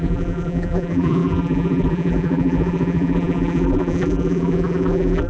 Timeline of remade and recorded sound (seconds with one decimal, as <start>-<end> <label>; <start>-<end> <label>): 0.0-5.3 remade